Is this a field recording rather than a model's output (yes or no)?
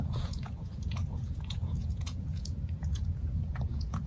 no